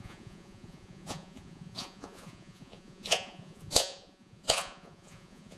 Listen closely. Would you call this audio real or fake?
fake